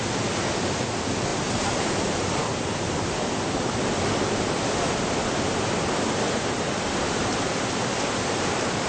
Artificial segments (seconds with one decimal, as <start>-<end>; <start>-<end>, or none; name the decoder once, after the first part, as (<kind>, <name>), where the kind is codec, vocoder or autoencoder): 1.3-3.8 (vocoder, BigVGAN v2); 7.3-8.9

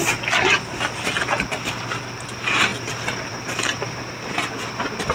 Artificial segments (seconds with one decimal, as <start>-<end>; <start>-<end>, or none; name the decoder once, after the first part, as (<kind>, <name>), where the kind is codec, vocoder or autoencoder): none

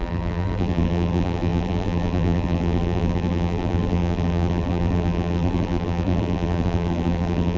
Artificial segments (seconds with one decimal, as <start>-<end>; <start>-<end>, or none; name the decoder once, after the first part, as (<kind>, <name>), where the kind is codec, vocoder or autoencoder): 0.0-7.6 (vocoder, BigVGAN v2)

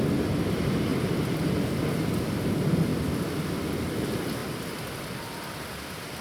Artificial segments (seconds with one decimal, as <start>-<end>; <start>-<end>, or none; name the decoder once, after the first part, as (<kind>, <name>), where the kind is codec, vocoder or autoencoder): 0.0-0.9 (vocoder, BigVGAN v2); 1.9-2.9; 3.5-4.4; 5.0-6.2

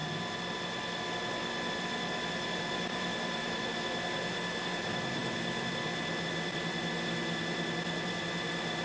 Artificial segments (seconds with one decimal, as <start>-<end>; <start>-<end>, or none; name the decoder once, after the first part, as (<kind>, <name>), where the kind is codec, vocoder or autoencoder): 1.7-3.7 (vocoder, BigVGAN v2); 4.6-5.2; 6.3-8.8

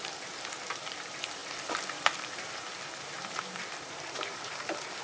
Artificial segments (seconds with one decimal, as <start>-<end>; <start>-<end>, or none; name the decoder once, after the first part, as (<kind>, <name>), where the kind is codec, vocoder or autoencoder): 0.0-5.0 (vocoder, BigVGAN v2)

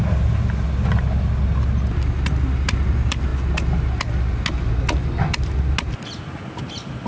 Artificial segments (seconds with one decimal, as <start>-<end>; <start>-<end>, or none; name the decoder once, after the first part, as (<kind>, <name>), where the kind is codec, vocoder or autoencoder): none

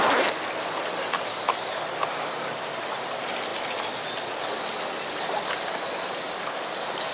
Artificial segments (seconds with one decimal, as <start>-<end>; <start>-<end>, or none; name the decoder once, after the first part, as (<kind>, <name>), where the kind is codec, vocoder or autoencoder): 3.5-5.2 (vocoder, BigVGAN v2)